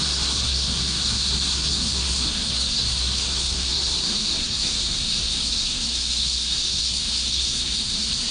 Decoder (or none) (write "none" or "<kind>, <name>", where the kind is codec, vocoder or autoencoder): codec, SNAC